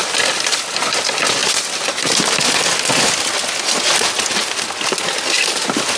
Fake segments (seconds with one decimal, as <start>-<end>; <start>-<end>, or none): none